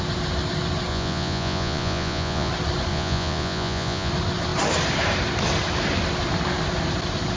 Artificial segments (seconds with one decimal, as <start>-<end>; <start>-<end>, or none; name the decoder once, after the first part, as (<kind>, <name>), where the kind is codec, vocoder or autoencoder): 0.9-2.5 (vocoder, Vocos); 2.9-4.1